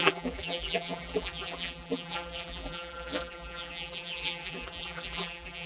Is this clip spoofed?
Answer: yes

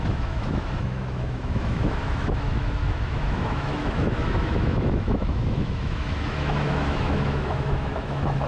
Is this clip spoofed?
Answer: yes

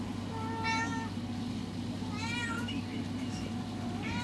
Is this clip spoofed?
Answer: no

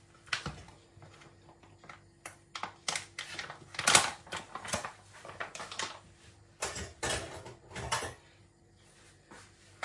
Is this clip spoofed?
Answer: no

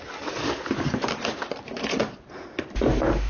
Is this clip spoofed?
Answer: yes